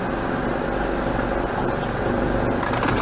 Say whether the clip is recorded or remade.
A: recorded